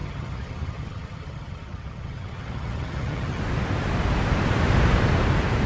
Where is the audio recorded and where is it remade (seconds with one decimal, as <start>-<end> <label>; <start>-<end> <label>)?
0.0-3.4 remade; 3.4-5.7 recorded